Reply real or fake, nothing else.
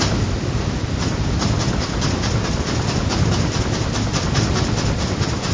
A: real